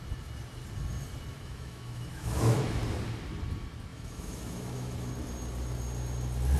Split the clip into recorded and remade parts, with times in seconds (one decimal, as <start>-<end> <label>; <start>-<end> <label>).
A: 0.0-1.3 recorded; 1.3-2.8 remade; 2.8-3.9 recorded; 3.9-5.1 remade; 5.1-6.6 recorded